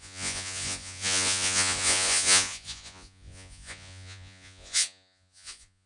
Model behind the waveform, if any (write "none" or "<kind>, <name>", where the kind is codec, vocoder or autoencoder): vocoder, Vocos